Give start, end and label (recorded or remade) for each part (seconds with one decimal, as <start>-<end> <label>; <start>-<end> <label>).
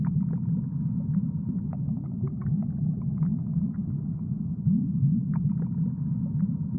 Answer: 0.0-2.3 recorded; 2.3-3.1 remade; 3.1-4.8 recorded; 4.8-5.9 remade; 5.9-6.8 recorded